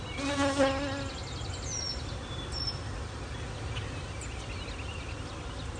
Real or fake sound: real